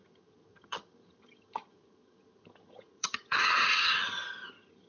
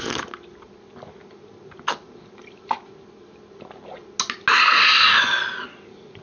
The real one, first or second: second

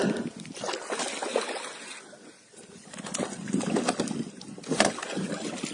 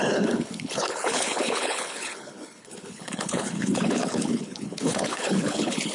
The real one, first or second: first